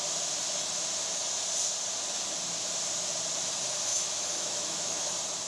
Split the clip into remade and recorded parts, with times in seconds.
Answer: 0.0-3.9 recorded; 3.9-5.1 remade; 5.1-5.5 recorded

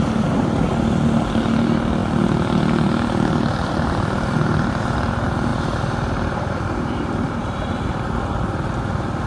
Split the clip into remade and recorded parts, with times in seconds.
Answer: 0.0-5.5 recorded; 5.5-7.7 remade; 7.7-9.3 recorded

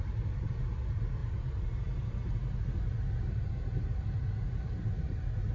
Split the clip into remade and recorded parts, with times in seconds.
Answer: 0.0-1.2 remade; 1.2-4.5 recorded; 4.5-5.5 remade

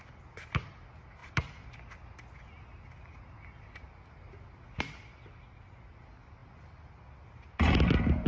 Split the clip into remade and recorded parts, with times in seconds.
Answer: 0.0-8.3 recorded